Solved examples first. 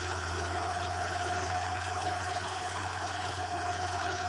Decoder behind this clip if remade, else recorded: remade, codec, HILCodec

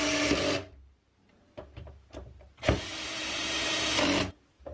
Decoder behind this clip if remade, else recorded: remade, vocoder, BigVGAN v2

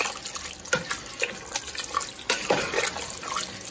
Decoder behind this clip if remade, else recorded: recorded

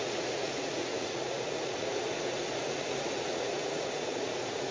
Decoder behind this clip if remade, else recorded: remade, vocoder, Vocos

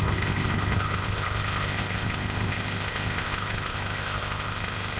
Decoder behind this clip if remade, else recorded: remade, codec, ZipCodec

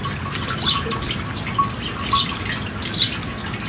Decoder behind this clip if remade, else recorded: recorded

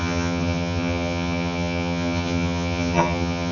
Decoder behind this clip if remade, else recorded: remade, vocoder, HiFi-GAN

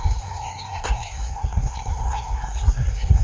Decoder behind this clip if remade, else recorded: remade, codec, SNAC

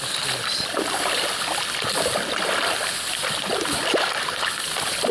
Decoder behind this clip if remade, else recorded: recorded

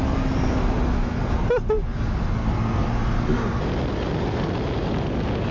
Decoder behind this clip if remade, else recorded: recorded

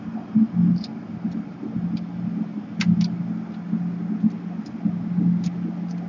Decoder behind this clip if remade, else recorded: recorded